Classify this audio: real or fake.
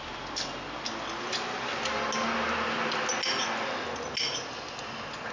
real